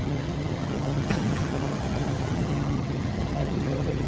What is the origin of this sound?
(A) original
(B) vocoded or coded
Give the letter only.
B